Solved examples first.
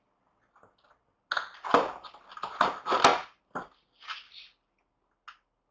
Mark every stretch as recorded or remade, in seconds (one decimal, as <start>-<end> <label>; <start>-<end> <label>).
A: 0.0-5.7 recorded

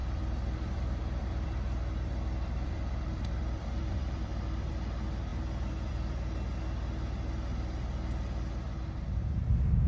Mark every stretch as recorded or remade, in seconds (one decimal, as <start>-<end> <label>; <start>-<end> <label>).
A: 0.0-4.7 remade; 4.7-9.9 recorded

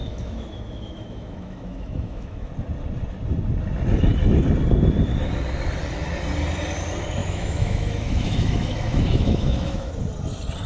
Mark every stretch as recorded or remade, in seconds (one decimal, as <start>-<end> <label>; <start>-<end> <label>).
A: 0.0-2.5 remade; 2.5-7.2 recorded; 7.2-9.9 remade; 9.9-10.7 recorded

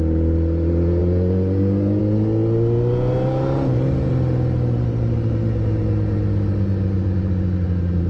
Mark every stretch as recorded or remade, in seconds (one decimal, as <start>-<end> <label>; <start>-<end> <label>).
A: 0.0-8.1 recorded

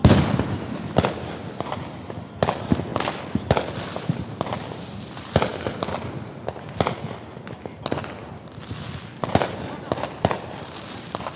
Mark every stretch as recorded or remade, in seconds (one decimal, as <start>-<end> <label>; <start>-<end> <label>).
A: 0.0-11.4 recorded